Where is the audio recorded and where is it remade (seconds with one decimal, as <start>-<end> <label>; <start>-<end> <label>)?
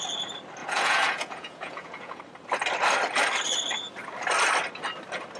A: 0.0-0.6 recorded; 0.6-2.2 remade; 2.2-5.4 recorded